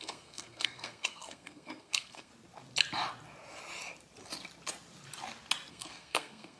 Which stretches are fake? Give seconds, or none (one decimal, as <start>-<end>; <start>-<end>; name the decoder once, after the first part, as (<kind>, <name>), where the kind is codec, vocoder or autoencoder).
0.0-2.3 (codec, SNAC); 5.7-6.6